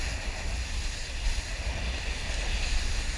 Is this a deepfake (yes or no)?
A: no